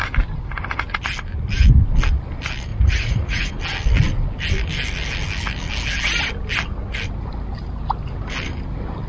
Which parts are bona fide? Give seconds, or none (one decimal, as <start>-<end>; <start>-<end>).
0.0-2.7; 3.6-9.1

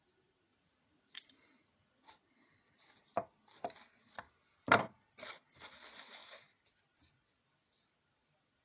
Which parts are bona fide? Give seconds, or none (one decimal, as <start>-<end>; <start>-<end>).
0.0-0.5; 2.1-8.6